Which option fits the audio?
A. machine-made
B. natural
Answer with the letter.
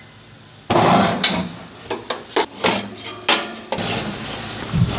B